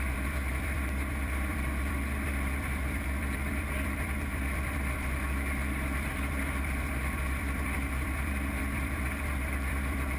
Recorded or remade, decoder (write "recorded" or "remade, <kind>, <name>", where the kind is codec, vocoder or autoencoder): remade, vocoder, BigVGAN v2